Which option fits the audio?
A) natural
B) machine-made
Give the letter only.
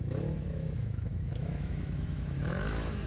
B